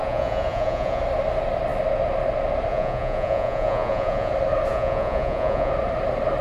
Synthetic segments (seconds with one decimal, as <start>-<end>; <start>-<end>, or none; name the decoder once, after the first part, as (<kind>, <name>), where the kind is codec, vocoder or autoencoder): 0.0-1.0 (vocoder, Vocos); 2.7-4.3; 4.7-5.7